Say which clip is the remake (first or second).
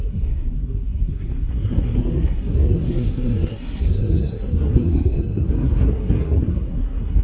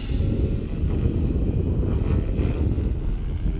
first